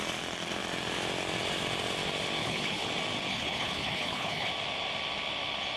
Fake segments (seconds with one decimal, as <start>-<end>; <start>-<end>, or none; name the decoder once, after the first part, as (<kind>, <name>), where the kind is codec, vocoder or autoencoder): 2.4-2.9 (codec, HILCodec); 3.3-4.5